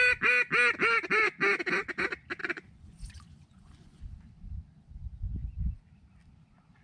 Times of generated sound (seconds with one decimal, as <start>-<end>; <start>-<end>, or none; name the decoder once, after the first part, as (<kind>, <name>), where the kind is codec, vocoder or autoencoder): 2.4-4.0 (vocoder, Vocos)